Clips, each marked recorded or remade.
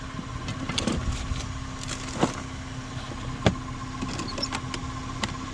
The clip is recorded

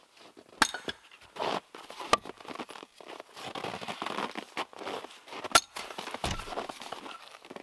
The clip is recorded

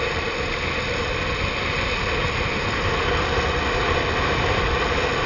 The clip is recorded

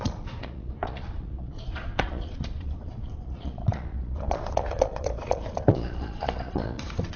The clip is remade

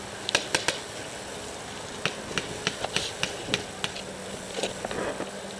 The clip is recorded